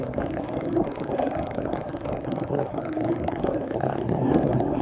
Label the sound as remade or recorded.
remade